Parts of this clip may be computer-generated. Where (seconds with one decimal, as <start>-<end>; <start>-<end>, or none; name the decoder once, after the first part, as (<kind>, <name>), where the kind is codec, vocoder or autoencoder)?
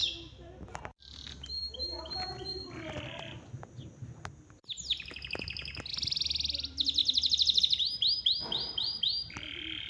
none